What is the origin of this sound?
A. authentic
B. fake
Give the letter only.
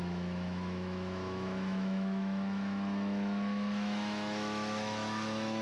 B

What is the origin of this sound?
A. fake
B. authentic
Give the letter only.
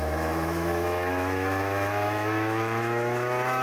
A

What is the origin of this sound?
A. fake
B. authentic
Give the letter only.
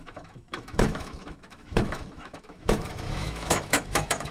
A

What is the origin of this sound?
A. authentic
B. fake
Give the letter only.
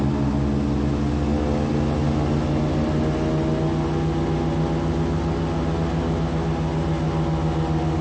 A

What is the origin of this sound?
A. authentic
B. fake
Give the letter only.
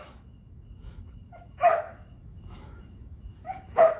B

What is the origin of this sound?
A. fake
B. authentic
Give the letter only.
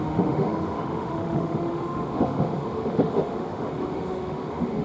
A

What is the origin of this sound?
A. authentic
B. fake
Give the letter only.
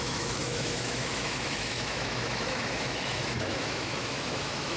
B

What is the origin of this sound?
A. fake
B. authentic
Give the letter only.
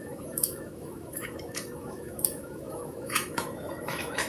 A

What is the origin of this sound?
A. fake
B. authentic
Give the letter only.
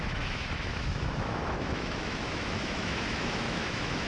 A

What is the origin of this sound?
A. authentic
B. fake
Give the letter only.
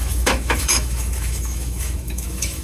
B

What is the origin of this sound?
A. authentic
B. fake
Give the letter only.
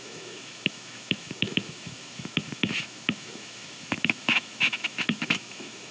B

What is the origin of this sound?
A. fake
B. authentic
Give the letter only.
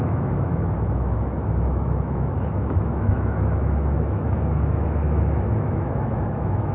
A